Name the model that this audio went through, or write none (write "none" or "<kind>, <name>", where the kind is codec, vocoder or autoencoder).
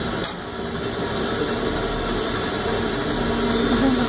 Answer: none